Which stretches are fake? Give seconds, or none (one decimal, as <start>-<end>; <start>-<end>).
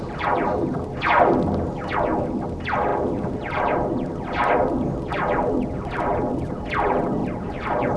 7.2-8.0